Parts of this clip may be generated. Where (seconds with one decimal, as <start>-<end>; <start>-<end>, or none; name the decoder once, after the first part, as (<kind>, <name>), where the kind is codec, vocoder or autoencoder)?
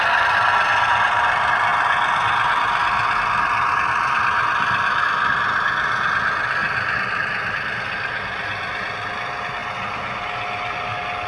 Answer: none